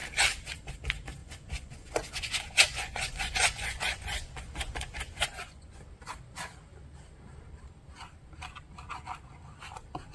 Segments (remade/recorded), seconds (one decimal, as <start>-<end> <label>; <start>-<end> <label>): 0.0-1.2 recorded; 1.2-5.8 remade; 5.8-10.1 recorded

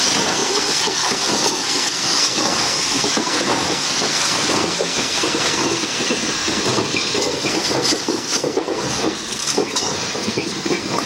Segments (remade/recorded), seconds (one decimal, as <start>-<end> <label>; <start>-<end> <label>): 0.0-11.1 remade

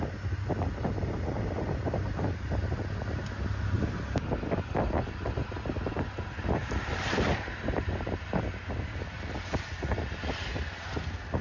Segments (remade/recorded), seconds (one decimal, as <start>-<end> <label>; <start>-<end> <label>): 0.0-6.6 recorded; 6.6-8.4 remade; 8.4-11.4 recorded

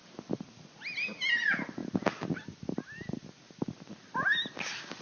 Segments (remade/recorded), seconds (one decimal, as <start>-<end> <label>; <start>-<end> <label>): 0.0-5.0 recorded